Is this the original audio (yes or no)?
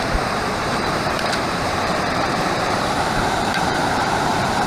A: no